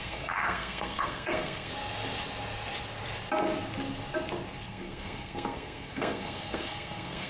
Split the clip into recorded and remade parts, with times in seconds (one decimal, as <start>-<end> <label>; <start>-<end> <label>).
0.0-1.7 remade; 1.7-4.6 recorded; 4.6-7.3 remade